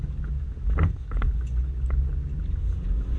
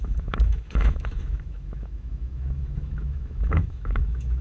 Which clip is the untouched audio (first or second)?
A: first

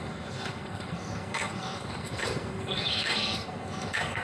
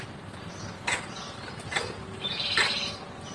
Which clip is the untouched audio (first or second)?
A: second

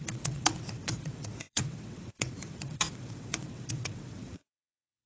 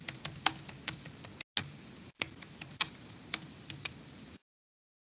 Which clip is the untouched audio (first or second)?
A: second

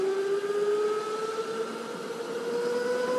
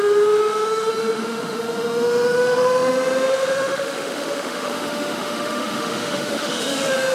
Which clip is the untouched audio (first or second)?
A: first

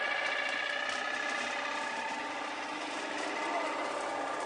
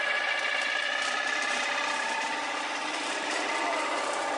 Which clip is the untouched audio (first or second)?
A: first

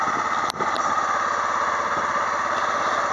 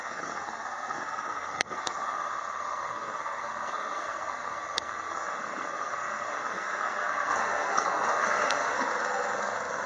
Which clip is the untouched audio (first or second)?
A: first